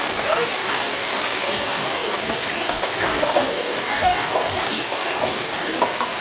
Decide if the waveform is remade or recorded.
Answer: remade